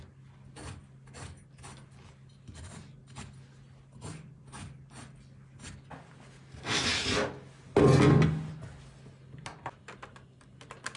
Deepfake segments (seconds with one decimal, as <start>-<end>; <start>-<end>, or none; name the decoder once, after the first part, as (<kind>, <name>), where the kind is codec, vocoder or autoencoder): none